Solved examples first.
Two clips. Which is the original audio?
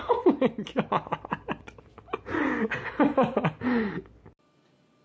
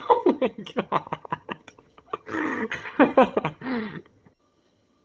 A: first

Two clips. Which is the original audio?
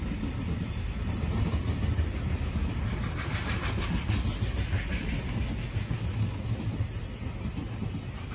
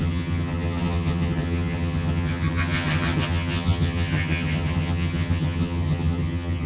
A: first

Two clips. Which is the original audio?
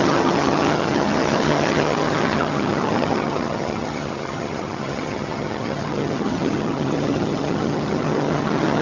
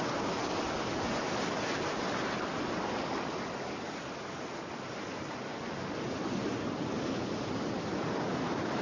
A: second